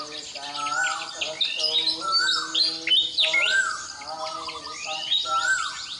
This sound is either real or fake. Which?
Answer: real